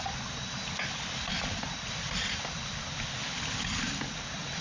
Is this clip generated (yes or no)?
no